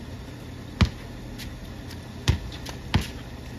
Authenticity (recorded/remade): recorded